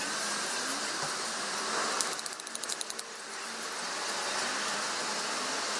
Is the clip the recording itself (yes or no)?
yes